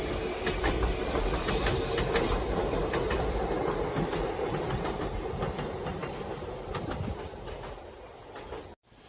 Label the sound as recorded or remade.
recorded